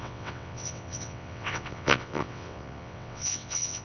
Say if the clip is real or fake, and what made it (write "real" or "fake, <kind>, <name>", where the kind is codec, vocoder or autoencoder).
fake, vocoder, WaveNeXt